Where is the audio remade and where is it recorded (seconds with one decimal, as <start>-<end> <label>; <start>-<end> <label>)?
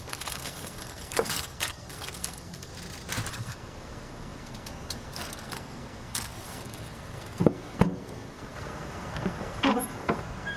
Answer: 0.0-2.7 remade; 2.7-3.3 recorded; 3.3-10.6 remade